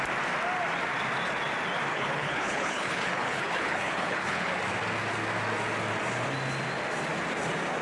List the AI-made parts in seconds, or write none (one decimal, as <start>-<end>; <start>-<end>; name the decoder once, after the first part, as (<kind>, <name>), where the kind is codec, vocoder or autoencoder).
1.9-4.5 (codec, HILCodec)